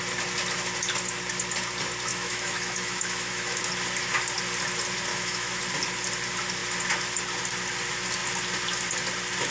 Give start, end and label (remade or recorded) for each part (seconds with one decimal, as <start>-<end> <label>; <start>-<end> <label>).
0.0-2.1 recorded; 2.1-3.6 remade; 3.6-5.1 recorded; 5.1-5.6 remade; 5.6-9.5 recorded